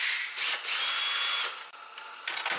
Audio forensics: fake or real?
real